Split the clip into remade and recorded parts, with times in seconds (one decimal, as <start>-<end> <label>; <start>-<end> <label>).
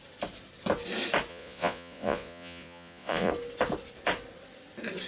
0.0-1.3 recorded; 1.3-3.3 remade; 3.3-5.1 recorded